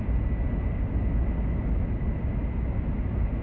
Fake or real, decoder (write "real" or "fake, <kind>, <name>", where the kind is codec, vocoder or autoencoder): real